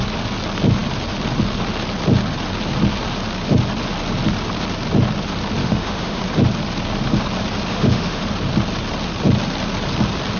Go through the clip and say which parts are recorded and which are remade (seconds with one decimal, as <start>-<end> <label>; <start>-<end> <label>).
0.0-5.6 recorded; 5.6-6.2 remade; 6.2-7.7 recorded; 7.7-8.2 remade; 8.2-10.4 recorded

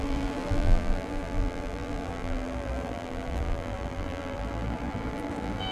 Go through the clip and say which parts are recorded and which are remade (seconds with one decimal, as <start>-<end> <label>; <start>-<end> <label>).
0.0-5.7 remade

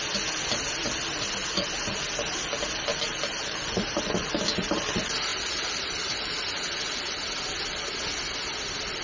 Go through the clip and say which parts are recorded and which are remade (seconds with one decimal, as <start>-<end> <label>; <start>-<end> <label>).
0.0-2.9 recorded; 2.9-4.7 remade; 4.7-5.3 recorded; 5.3-7.4 remade; 7.4-9.0 recorded

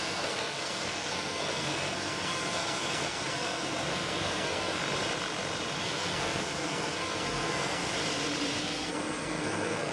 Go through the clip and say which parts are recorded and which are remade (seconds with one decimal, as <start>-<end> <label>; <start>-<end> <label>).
0.0-4.8 remade; 4.8-5.8 recorded; 5.8-7.8 remade; 7.8-8.6 recorded; 8.6-9.9 remade

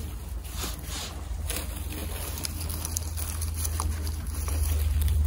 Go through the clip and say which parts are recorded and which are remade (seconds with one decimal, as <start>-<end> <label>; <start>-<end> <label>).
0.0-2.0 recorded; 2.0-5.3 remade